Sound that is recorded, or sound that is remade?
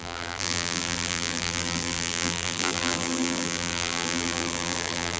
remade